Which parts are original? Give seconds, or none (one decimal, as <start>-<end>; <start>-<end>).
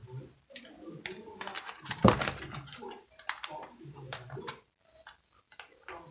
0.0-2.0; 4.5-6.1